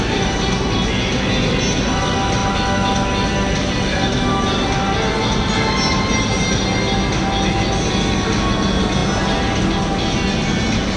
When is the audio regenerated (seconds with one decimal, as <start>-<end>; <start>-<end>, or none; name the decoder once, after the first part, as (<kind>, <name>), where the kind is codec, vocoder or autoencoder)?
none